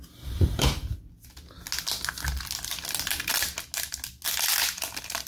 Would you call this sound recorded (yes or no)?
yes